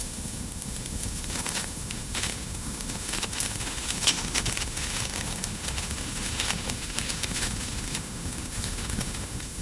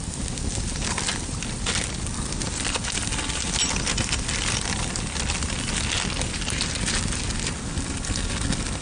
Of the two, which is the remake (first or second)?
first